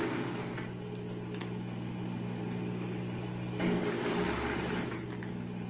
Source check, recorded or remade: recorded